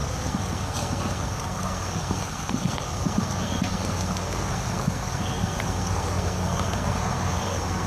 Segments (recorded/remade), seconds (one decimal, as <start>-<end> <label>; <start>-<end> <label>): 0.0-7.9 remade